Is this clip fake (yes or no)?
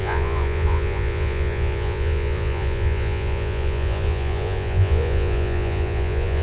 yes